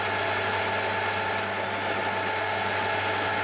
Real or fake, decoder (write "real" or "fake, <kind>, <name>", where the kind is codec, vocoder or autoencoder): real